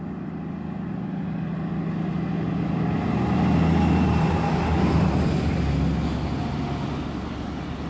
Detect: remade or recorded recorded